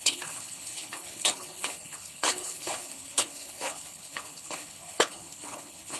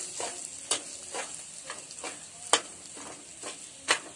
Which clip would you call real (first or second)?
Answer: second